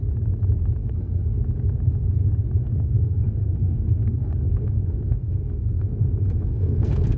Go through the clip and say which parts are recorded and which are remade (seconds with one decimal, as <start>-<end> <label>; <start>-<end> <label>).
0.0-0.8 recorded; 0.8-1.4 remade; 1.4-2.6 recorded; 2.6-7.2 remade